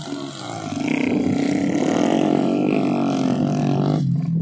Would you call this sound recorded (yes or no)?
yes